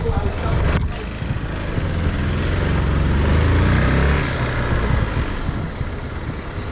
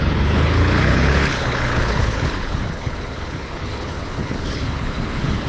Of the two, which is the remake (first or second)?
second